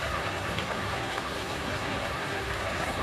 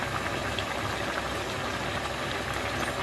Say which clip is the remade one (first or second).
first